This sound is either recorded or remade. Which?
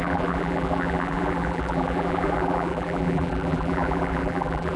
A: remade